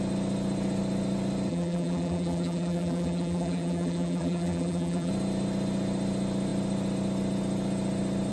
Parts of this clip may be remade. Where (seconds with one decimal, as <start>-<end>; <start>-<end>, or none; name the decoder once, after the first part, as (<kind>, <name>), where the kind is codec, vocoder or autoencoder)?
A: 1.5-5.1 (vocoder, BigVGAN v2)